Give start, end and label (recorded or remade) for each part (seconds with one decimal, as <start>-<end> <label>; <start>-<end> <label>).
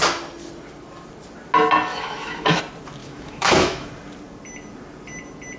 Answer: 0.0-1.9 recorded; 1.9-2.6 remade; 2.6-3.0 recorded; 3.0-3.9 remade; 3.9-5.6 recorded